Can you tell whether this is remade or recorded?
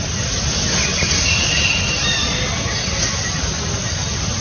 recorded